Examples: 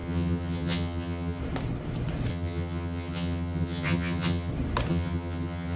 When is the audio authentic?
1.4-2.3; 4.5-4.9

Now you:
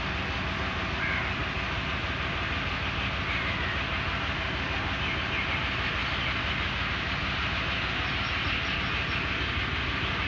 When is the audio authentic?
0.0-10.3

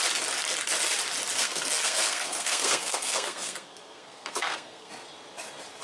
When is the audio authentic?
0.0-1.4; 4.9-5.8

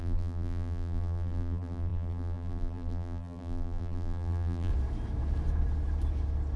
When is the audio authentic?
4.7-6.6

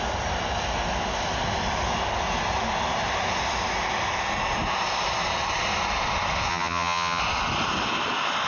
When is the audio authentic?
0.0-6.5; 7.2-8.5